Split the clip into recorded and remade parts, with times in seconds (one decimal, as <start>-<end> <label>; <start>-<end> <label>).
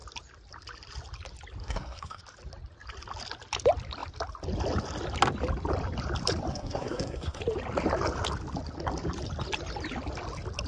0.0-1.6 recorded; 1.6-2.2 remade; 2.2-6.5 recorded; 6.5-7.4 remade; 7.4-10.7 recorded